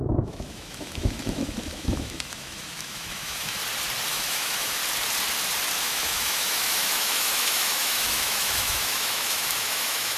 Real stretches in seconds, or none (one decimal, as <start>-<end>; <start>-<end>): 3.6-4.1; 4.8-5.8